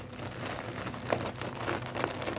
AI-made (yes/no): no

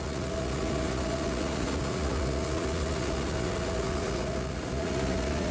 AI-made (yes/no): yes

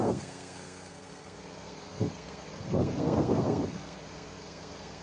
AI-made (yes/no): yes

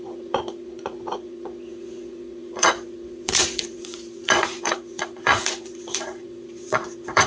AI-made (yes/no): yes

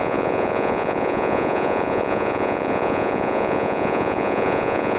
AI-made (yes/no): yes